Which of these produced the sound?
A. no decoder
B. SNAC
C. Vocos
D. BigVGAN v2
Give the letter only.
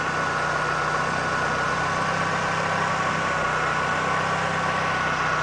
A